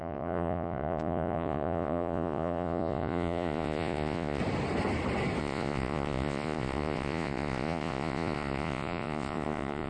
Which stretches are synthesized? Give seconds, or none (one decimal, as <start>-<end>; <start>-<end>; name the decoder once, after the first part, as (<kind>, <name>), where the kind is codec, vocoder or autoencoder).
0.0-4.4 (vocoder, Vocos); 5.4-9.9